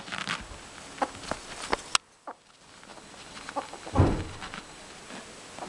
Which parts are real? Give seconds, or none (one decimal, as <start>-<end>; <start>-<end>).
0.0-2.9; 4.9-5.7

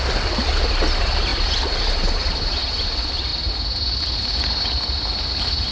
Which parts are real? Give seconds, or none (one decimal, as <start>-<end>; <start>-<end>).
0.0-5.7